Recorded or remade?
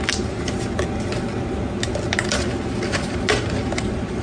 recorded